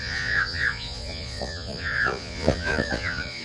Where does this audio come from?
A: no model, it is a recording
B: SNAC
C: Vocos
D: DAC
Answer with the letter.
C